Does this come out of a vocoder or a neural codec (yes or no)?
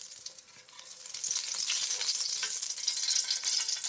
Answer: no